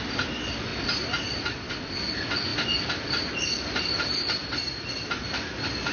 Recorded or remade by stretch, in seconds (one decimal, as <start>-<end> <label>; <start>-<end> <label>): 0.0-5.9 recorded